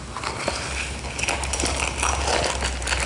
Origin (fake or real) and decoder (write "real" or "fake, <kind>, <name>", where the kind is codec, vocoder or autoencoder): real